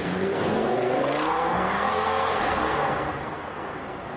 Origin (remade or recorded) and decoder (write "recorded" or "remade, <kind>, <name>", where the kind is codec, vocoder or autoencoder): remade, codec, SNAC